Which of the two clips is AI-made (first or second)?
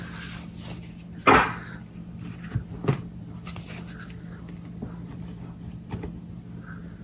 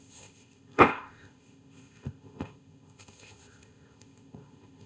second